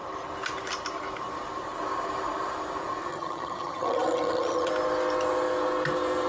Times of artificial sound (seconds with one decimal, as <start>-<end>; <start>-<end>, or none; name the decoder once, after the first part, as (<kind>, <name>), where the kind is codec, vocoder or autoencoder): 3.1-4.7 (vocoder, HiFi-GAN)